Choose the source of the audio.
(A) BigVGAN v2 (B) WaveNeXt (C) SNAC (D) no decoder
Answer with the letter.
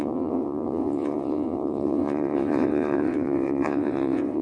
B